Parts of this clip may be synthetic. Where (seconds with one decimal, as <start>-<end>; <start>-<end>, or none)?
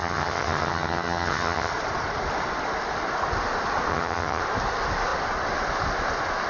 0.0-1.7; 3.9-4.4